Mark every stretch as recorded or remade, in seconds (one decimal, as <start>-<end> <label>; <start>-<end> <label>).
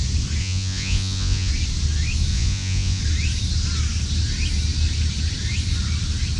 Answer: 0.0-0.4 recorded; 0.4-1.5 remade; 1.5-2.3 recorded; 2.3-3.0 remade; 3.0-6.4 recorded